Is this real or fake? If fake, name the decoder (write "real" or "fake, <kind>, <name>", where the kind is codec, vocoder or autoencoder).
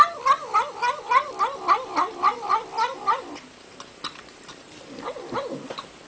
real